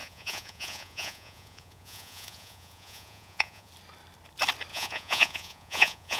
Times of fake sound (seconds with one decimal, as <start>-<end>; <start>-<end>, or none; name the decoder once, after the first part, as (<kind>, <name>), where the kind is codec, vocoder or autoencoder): 0.0-3.7 (vocoder, Vocos); 4.7-6.2